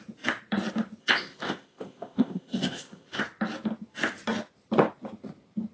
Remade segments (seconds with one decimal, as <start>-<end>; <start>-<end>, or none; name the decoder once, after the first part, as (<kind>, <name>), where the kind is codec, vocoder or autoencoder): 1.0-3.2 (codec, ZipCodec)

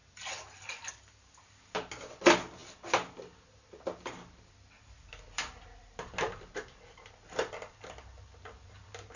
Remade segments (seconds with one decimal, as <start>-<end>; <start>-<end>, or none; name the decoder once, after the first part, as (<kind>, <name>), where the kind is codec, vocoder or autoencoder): none

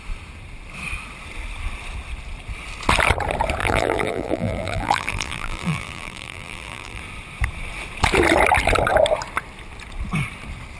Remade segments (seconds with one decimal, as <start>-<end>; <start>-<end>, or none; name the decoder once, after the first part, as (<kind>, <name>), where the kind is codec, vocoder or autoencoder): 3.6-7.0 (vocoder, BigVGAN v2)

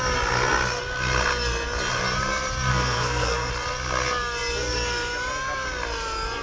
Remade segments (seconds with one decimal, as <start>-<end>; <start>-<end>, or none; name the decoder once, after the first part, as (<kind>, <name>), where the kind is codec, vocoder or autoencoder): 2.7-3.5 (codec, SNAC)

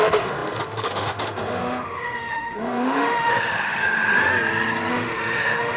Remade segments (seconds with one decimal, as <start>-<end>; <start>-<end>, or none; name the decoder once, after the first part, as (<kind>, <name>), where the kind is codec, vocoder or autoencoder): 0.0-4.3 (autoencoder, DAC-VAE); 4.9-5.8

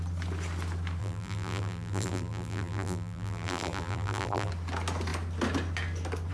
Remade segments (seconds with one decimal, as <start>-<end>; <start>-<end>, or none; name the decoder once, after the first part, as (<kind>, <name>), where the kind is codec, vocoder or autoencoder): 1.0-4.5 (vocoder, BigVGAN v2)

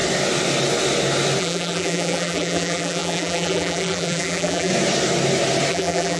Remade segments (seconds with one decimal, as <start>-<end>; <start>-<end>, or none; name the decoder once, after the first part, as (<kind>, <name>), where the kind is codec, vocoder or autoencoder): 1.4-4.7 (vocoder, BigVGAN v2); 5.7-6.2